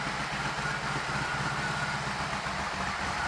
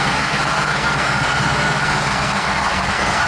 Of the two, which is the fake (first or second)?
second